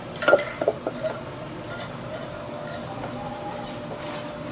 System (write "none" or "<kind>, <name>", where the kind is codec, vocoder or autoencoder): none